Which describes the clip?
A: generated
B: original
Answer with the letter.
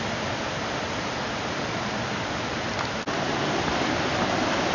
B